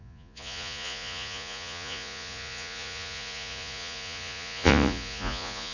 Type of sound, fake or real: fake